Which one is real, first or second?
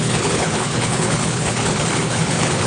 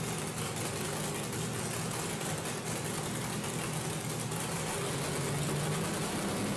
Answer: second